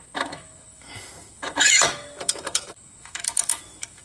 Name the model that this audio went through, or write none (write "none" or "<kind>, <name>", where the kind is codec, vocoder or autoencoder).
autoencoder, DAC-VAE